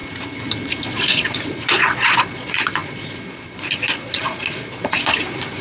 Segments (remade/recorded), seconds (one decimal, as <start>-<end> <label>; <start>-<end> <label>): 0.0-0.9 recorded; 0.9-5.6 remade